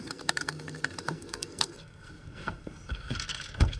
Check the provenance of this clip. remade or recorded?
remade